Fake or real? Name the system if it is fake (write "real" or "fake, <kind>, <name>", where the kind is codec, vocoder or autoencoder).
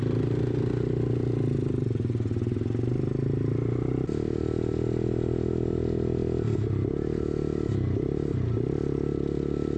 real